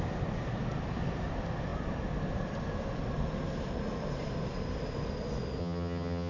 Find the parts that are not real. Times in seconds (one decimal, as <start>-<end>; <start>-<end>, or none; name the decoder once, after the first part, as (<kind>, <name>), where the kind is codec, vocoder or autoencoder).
5.6-6.3 (vocoder, HiFi-GAN)